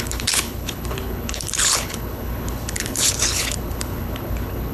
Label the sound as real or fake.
fake